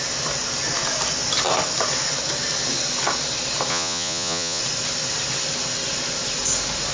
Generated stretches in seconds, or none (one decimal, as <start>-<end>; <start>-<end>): 3.7-4.6